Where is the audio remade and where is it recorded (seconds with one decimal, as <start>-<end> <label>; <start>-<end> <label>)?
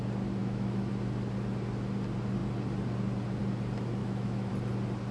0.0-0.4 recorded; 0.4-0.9 remade; 0.9-4.0 recorded; 4.0-4.5 remade; 4.5-5.1 recorded